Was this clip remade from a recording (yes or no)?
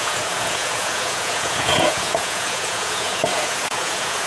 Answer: yes